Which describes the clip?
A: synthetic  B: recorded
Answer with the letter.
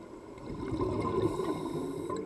B